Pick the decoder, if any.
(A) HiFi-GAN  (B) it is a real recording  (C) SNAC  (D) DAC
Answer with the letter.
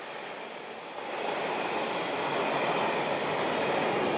B